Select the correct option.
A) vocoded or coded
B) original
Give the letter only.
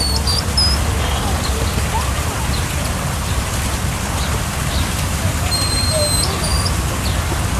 B